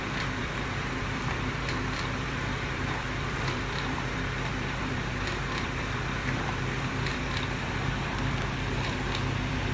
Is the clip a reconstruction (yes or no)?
yes